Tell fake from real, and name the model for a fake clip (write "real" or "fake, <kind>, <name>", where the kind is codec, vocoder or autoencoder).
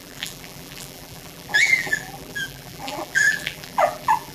fake, vocoder, BigVGAN v2